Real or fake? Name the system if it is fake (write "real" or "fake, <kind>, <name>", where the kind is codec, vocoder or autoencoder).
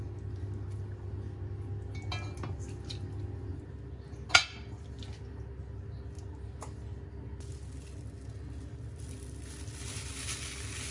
real